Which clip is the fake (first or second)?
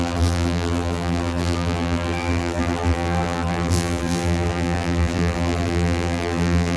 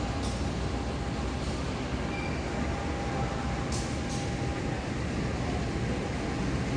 first